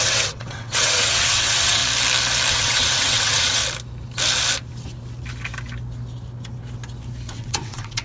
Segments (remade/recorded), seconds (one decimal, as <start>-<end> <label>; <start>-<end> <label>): 0.0-1.8 remade; 1.8-2.5 recorded; 2.5-3.6 remade; 3.6-7.3 recorded; 7.3-8.0 remade